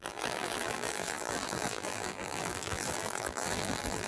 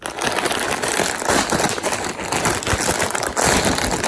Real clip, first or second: second